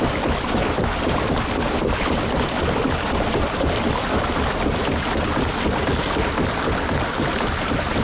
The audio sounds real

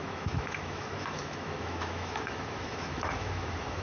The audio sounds fake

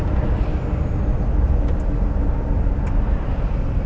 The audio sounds fake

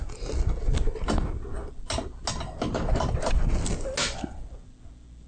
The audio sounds real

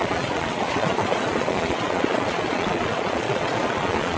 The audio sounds fake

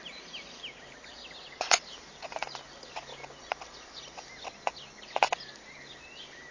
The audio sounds real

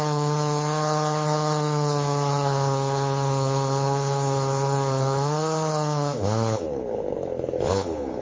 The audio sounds fake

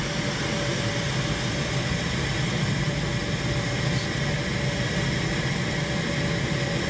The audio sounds real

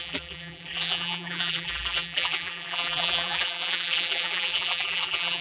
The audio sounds fake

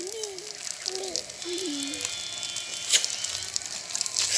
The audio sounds real